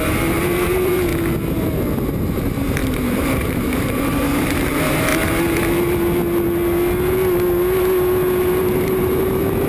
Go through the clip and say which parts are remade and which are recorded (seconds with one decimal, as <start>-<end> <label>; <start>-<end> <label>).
0.0-1.1 remade; 1.1-2.1 recorded; 2.1-5.1 remade; 5.1-8.6 recorded; 8.6-9.7 remade